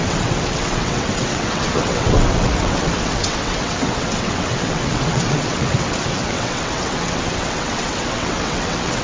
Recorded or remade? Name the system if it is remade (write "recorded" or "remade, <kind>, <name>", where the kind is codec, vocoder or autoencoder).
remade, vocoder, WaveNeXt